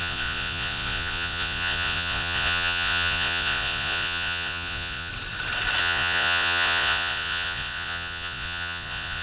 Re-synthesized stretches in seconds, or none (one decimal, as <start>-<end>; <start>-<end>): 0.0-5.1; 5.8-9.2